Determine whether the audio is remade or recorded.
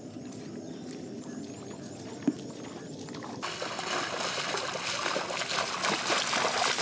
recorded